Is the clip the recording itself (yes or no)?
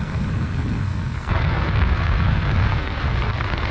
no